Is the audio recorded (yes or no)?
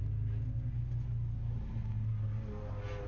yes